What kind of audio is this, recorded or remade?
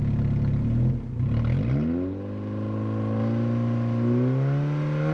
recorded